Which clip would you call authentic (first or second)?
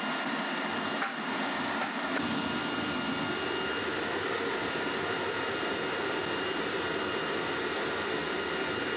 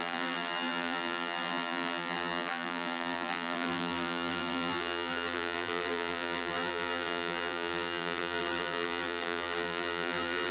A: first